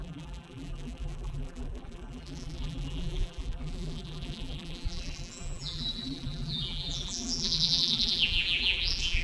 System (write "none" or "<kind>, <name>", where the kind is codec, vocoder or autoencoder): vocoder, BigVGAN v2